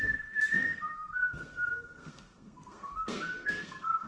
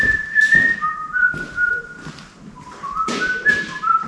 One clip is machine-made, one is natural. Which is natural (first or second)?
second